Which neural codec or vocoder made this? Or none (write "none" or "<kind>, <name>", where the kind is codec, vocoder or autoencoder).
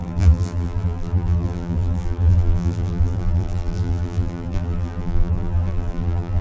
vocoder, BigVGAN v2